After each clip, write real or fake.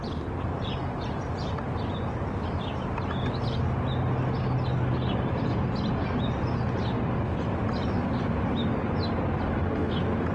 real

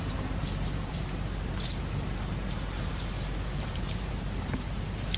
fake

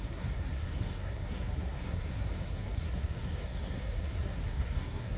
fake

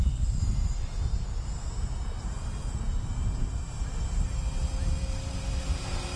fake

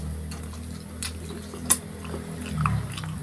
real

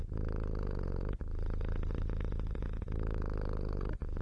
fake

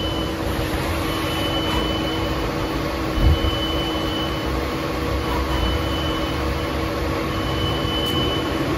fake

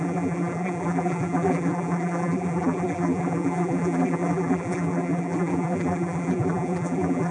fake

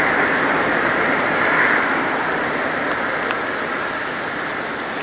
real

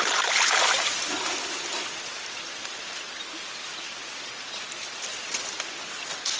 real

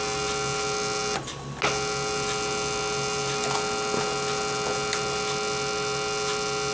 real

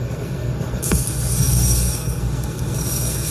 fake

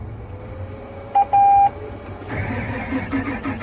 real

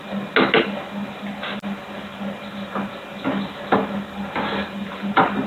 real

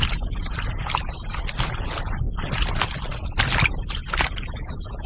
real